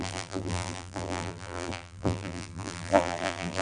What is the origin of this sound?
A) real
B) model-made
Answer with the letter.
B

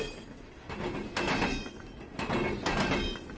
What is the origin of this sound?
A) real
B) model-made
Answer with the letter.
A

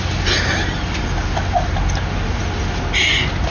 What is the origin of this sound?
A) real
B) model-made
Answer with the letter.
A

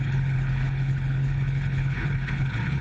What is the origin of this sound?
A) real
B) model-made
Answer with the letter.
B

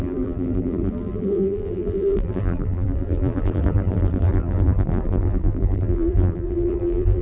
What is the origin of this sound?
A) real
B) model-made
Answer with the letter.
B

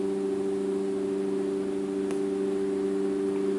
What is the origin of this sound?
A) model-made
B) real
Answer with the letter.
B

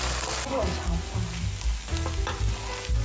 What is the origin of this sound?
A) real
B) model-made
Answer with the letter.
A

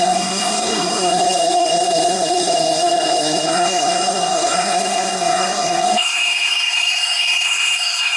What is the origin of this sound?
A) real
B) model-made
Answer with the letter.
B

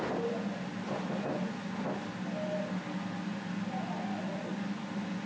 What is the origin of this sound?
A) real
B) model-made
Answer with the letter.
A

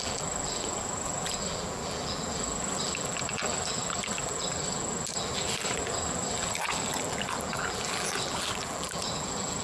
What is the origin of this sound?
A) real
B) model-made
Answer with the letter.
B